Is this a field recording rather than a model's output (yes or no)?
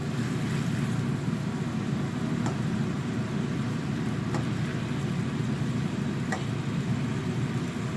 yes